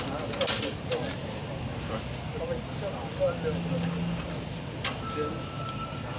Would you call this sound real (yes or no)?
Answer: yes